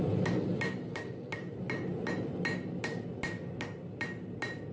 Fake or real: real